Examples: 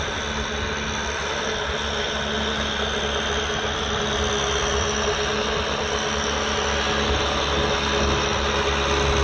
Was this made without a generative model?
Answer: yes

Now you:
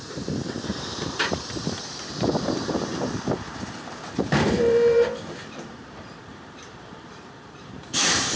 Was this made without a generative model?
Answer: no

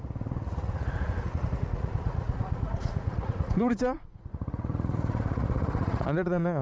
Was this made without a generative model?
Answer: no